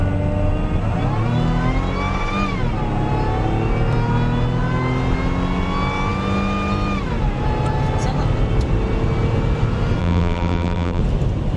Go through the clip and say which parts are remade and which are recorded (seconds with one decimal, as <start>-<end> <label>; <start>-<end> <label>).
0.0-10.0 recorded; 10.0-11.0 remade; 11.0-11.6 recorded